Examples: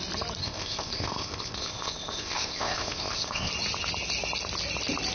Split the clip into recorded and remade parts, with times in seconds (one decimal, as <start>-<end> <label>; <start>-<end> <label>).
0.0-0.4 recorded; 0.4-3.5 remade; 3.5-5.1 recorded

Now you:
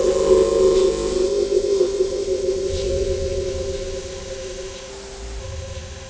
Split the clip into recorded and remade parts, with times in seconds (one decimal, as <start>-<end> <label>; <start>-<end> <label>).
0.0-4.9 remade; 4.9-5.4 recorded; 5.4-6.1 remade

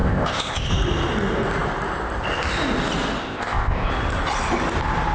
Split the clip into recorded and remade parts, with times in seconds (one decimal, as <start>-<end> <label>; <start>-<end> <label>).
0.0-0.7 remade; 0.7-3.2 recorded; 3.2-3.9 remade; 3.9-5.1 recorded

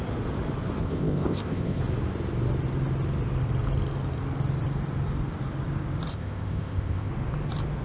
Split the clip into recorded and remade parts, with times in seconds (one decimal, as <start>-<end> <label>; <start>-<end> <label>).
0.0-0.8 recorded; 0.8-1.8 remade; 1.8-6.1 recorded; 6.1-7.1 remade; 7.1-7.8 recorded